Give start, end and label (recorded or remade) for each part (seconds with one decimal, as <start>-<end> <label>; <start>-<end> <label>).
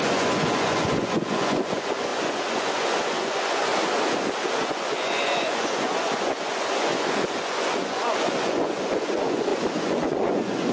0.0-3.7 remade; 3.7-4.5 recorded; 4.5-10.7 remade